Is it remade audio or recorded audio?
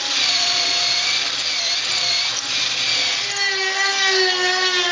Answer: recorded